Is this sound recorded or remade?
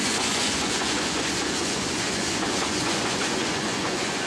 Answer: remade